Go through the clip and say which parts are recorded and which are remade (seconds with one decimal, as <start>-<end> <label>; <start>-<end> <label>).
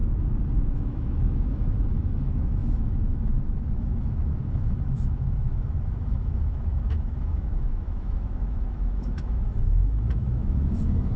0.0-0.6 recorded; 0.6-11.2 remade